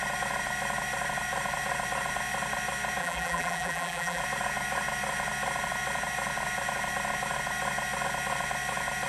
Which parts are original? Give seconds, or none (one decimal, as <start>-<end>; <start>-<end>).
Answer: 0.0-3.0; 4.2-9.1